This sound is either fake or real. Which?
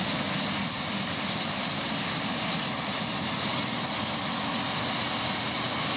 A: real